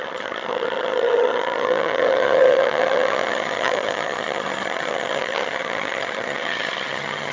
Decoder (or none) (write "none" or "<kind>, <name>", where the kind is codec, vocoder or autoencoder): vocoder, HiFi-GAN